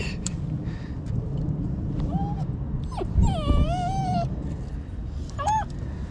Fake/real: real